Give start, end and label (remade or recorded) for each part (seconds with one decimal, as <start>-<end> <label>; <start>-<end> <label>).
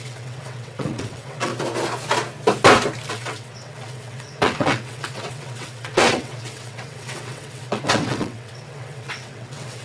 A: 0.0-1.5 remade; 1.5-3.1 recorded; 3.1-9.8 remade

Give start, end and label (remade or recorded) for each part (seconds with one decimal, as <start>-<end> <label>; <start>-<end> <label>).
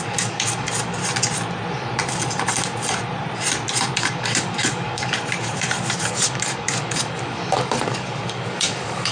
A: 0.0-1.0 remade; 1.0-4.0 recorded; 4.0-9.1 remade